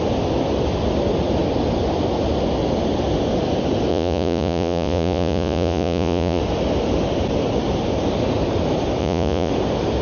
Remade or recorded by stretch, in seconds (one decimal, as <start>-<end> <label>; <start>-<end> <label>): 0.0-3.9 recorded; 3.9-6.4 remade; 6.4-9.0 recorded; 9.0-9.5 remade; 9.5-10.0 recorded